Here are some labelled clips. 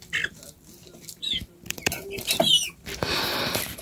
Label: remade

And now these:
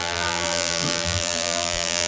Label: remade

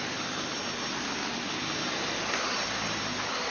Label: recorded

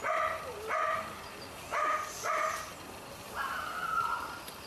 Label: remade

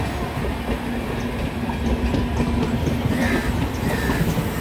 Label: recorded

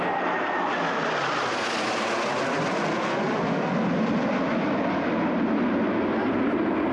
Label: recorded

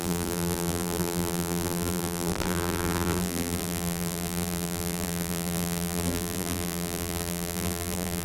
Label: remade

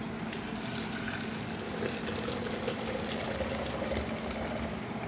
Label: recorded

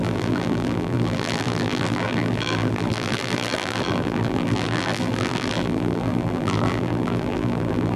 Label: remade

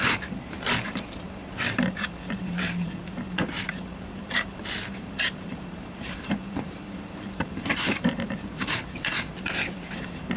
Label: remade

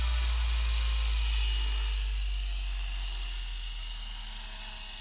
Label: recorded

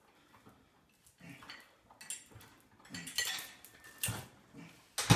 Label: recorded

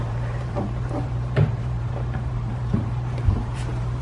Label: remade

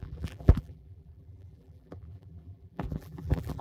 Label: remade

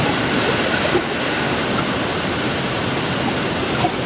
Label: recorded